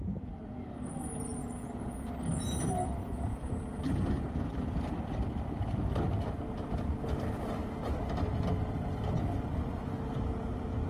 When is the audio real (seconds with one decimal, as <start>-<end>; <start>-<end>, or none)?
0.0-1.4; 2.1-3.0; 3.8-10.9